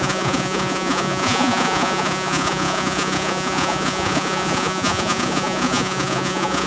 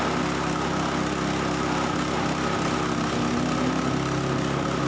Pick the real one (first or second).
second